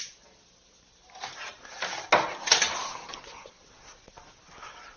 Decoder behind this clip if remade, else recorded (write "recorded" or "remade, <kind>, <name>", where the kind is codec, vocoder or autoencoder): recorded